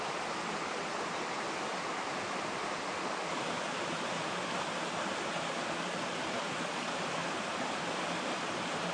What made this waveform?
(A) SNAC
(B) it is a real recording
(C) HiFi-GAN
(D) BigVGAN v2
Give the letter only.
B